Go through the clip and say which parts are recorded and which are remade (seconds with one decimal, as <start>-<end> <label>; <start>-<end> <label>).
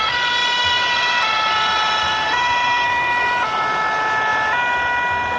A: 0.0-0.4 recorded; 0.4-3.6 remade; 3.6-5.4 recorded